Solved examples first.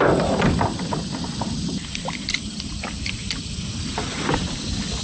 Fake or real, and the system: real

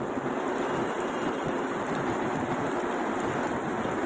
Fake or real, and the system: fake, vocoder, BigVGAN v2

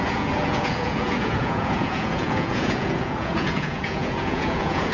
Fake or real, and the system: fake, vocoder, Vocos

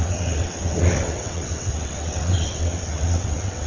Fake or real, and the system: fake, vocoder, WaveNeXt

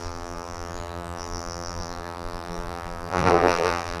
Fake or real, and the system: fake, vocoder, BigVGAN v2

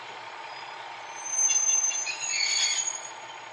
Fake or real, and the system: fake, vocoder, Vocos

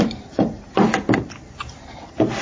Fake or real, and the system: real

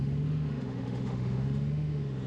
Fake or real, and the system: fake, autoencoder, DAC-VAE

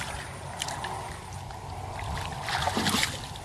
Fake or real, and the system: real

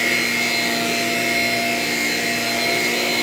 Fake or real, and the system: real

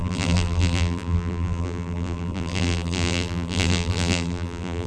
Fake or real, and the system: fake, vocoder, BigVGAN v2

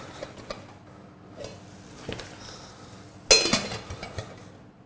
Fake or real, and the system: real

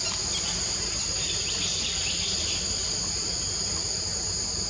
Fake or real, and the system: real